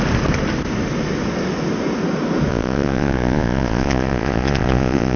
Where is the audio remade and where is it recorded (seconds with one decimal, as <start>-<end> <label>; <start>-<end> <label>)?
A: 0.0-2.5 recorded; 2.5-5.2 remade